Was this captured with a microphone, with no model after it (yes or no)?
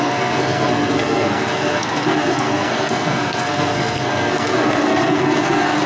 no